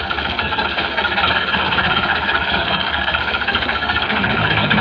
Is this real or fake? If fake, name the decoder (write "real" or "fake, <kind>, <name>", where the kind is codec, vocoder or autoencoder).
fake, codec, SNAC